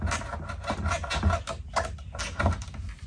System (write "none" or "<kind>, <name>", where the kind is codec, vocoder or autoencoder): none